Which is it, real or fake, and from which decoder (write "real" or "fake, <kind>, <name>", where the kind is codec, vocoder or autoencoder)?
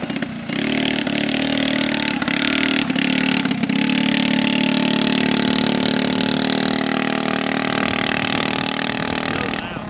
real